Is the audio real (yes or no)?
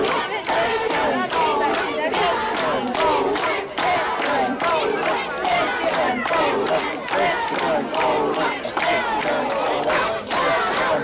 yes